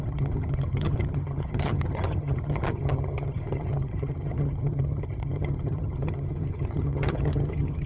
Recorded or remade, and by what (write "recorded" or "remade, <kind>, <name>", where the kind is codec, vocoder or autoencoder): remade, vocoder, HiFi-GAN